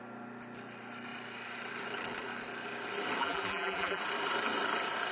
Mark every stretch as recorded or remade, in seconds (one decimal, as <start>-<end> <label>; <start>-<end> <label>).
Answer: 0.0-3.2 recorded; 3.2-4.0 remade; 4.0-5.1 recorded